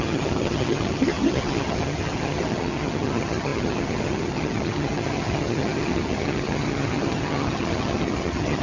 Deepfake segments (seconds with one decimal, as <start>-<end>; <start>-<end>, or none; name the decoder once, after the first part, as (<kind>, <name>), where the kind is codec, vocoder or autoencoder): 0.0-8.6 (vocoder, HiFi-GAN)